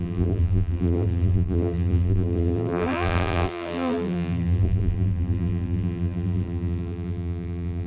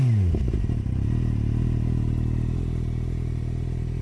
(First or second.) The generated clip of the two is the first